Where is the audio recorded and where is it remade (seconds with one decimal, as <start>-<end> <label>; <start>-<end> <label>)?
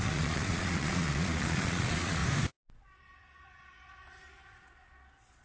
0.0-2.2 remade; 2.2-2.7 recorded; 2.7-5.4 remade